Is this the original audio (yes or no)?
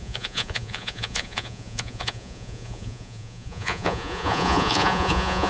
no